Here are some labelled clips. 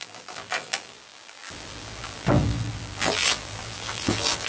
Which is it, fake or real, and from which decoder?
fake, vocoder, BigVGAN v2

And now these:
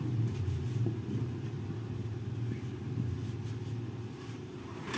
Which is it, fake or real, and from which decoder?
fake, vocoder, BigVGAN v2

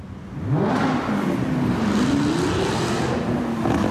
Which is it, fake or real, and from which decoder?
real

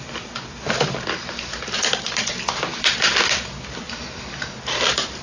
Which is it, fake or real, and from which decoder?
fake, vocoder, BigVGAN v2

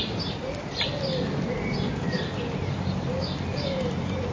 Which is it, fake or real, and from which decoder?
real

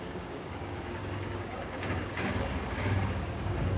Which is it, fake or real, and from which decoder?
fake, codec, DAC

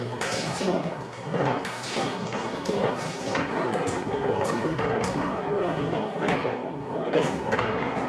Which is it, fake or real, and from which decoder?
fake, codec, SNAC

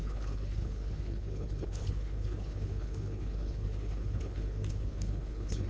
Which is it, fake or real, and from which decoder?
fake, codec, HILCodec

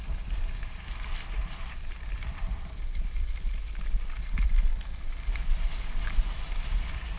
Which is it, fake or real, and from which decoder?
fake, vocoder, BigVGAN v2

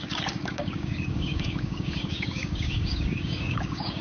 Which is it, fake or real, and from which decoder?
fake, codec, DAC